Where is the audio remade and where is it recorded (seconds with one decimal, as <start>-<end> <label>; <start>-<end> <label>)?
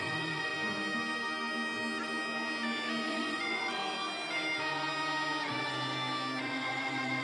0.0-0.5 remade; 0.5-3.1 recorded; 3.1-3.8 remade; 3.8-6.4 recorded; 6.4-7.2 remade